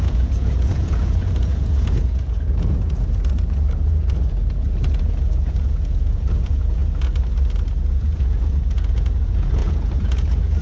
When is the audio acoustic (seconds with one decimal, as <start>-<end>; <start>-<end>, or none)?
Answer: 6.8-7.9